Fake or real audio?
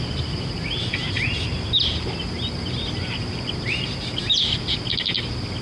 real